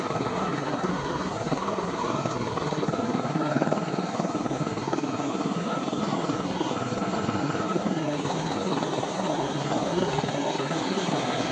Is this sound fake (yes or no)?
yes